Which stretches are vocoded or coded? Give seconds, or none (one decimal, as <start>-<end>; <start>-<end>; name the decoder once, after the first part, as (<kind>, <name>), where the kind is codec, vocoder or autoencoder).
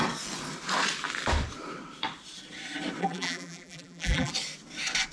3.0-4.3 (vocoder, BigVGAN v2)